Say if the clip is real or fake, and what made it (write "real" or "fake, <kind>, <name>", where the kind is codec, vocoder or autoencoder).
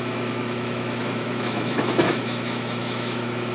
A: fake, autoencoder, DAC-VAE